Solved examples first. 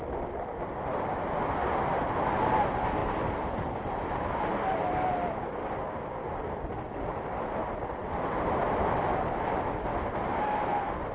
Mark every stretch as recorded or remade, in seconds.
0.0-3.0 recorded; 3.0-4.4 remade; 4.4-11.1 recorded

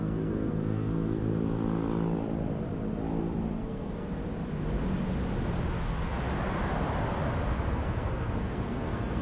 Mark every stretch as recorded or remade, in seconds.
0.0-1.2 remade; 1.2-3.5 recorded; 3.5-4.2 remade; 4.2-7.7 recorded; 7.7-9.2 remade